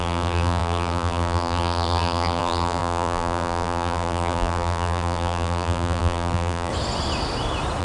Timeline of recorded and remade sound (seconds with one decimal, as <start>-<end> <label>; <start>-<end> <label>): 0.0-6.7 remade; 6.7-7.8 recorded